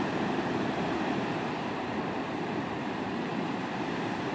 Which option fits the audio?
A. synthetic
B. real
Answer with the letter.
A